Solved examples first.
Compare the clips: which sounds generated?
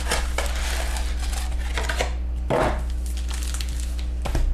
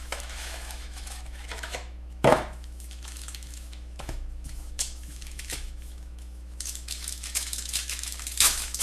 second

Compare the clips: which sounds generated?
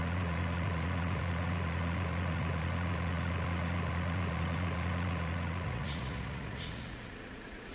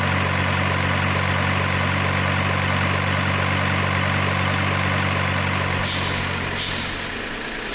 first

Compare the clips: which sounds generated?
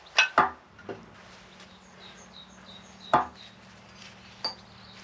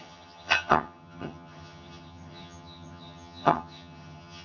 second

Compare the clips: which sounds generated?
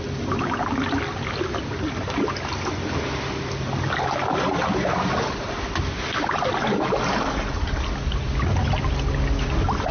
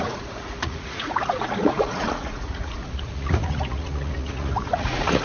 second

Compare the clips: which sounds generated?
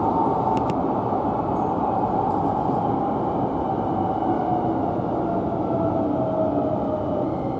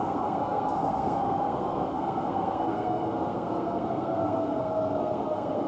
second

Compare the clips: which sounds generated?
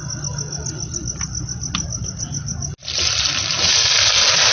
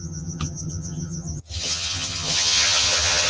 second